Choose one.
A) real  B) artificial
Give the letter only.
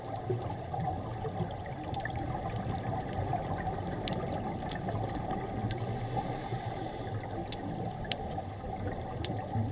A